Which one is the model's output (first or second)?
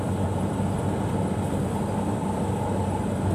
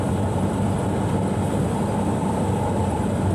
second